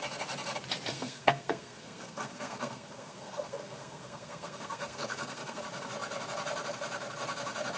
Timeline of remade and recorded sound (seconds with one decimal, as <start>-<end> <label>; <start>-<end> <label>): 0.0-0.9 recorded; 0.9-5.6 remade; 5.6-7.8 recorded